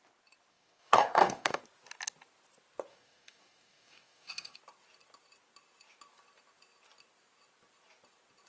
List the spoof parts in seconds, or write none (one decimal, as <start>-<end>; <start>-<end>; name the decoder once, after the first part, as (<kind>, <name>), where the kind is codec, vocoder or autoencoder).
0.5-1.6 (codec, DAC); 2.9-4.6